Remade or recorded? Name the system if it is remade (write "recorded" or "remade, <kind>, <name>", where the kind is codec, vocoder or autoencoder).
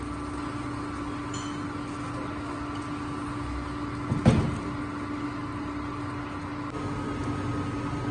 recorded